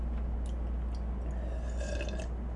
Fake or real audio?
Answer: real